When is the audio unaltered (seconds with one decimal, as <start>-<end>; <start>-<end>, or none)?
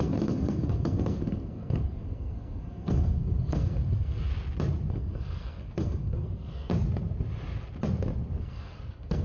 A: 4.3-4.9; 6.7-8.4